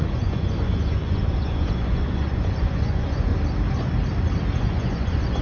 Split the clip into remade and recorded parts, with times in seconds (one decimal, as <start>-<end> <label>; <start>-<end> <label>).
0.0-3.3 remade; 3.3-4.6 recorded; 4.6-5.4 remade